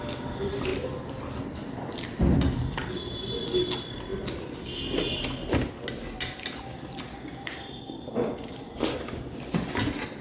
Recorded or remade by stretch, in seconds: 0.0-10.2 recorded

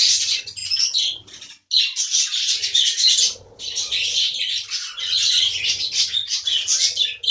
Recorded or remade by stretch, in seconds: 0.0-7.3 recorded

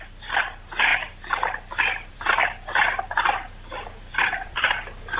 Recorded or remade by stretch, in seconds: 0.0-5.2 recorded

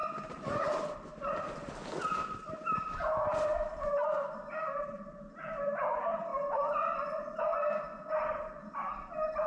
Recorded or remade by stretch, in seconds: 0.0-2.5 recorded; 2.5-9.5 remade

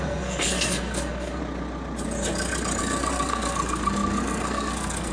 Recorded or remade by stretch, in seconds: 0.0-1.4 remade; 1.4-2.8 recorded; 2.8-5.1 remade